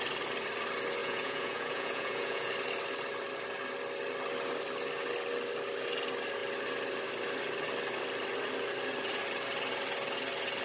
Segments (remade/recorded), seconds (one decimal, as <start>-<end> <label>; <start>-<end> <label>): 0.0-1.0 recorded; 1.0-2.5 remade; 2.5-10.6 recorded